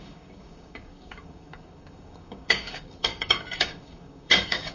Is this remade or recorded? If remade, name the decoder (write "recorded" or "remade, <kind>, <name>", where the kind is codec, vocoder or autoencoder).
remade, codec, DAC